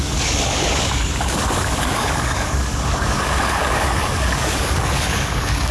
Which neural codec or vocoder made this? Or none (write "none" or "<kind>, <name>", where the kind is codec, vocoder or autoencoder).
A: codec, DAC